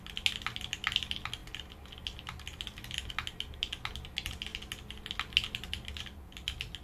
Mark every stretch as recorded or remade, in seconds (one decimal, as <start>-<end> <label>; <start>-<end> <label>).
0.0-6.8 recorded